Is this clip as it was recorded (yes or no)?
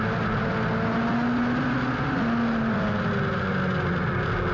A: yes